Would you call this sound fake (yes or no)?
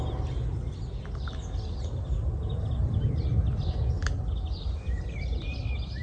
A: no